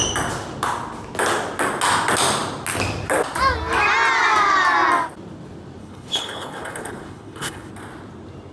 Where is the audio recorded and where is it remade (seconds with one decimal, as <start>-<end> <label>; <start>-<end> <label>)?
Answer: 0.0-5.8 recorded; 5.8-7.7 remade; 7.7-8.5 recorded